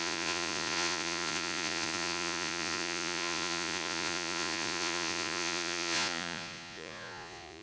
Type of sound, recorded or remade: remade